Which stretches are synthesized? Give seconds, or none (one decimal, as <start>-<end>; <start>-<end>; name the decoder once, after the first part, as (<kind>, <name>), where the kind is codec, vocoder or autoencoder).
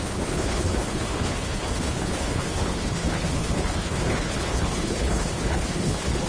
0.0-6.3 (codec, HILCodec)